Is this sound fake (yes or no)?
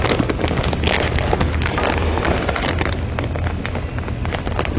no